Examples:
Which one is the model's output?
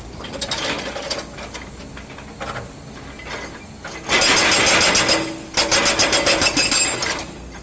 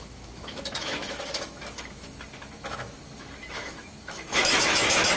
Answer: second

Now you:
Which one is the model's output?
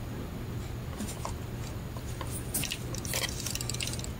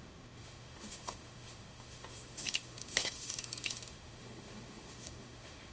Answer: second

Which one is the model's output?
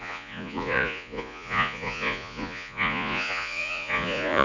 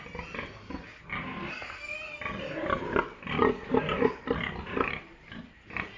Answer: first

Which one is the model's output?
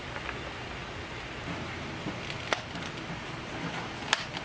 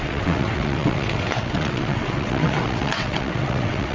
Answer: second